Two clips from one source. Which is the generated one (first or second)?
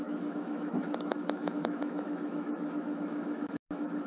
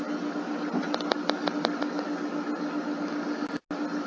first